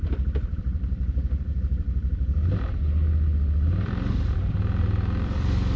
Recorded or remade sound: remade